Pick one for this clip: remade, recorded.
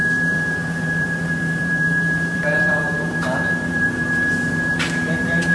remade